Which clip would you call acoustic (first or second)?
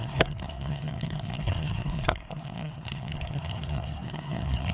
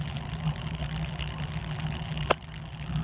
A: second